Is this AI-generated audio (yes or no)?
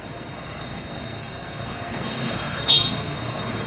yes